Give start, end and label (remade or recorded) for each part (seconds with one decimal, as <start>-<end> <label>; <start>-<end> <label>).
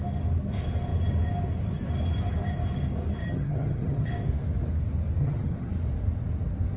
0.0-3.2 recorded; 3.2-4.1 remade; 4.1-5.2 recorded; 5.2-5.7 remade; 5.7-6.8 recorded